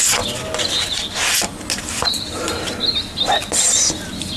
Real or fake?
real